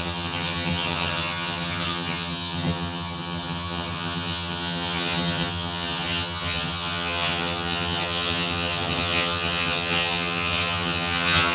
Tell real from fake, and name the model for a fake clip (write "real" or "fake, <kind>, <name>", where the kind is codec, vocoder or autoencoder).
fake, vocoder, HiFi-GAN